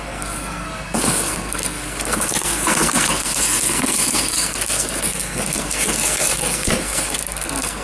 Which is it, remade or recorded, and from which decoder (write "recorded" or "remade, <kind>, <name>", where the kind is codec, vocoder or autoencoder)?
remade, codec, SNAC